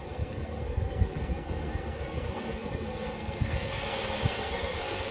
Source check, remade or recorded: remade